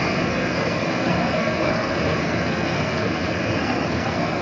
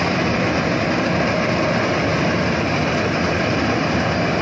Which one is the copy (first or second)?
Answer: first